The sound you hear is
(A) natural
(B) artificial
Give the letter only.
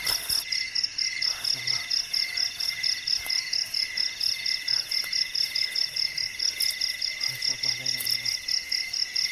A